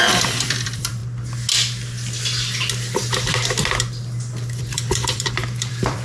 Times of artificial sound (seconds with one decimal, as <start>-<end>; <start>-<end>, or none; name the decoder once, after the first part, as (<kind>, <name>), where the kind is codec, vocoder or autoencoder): 0.0-1.0 (vocoder, BigVGAN v2); 4.6-6.0